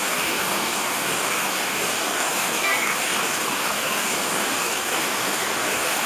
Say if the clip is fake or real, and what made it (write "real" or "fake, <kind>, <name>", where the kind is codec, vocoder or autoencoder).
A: fake, codec, DAC